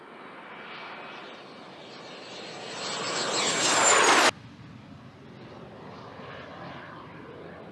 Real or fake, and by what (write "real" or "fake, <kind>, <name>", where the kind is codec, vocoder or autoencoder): real